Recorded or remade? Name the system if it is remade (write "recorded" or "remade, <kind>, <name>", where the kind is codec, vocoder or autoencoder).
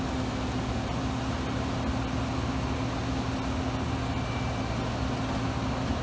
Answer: recorded